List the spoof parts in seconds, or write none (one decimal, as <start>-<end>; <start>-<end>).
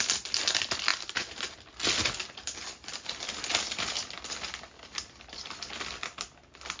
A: none